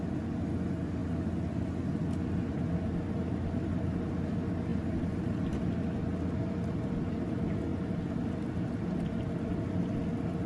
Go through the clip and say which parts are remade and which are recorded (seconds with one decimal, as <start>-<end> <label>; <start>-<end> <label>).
0.0-10.5 recorded